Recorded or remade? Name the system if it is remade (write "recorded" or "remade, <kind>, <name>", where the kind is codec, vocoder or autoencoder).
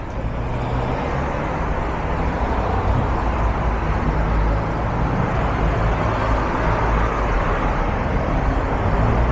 recorded